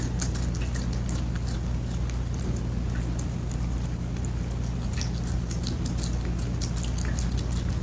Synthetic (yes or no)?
no